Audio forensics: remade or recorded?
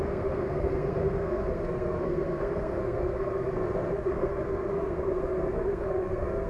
remade